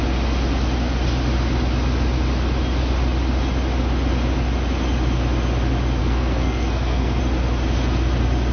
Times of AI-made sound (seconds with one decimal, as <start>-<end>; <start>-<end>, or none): 6.0-7.2